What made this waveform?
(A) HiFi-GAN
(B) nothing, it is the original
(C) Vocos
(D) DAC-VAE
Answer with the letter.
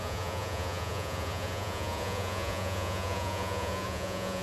C